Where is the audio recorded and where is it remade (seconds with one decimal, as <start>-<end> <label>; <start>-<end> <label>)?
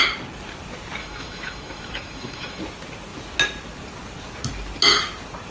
0.0-1.0 recorded; 1.0-2.6 remade; 2.6-5.5 recorded